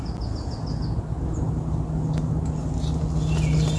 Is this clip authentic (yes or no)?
yes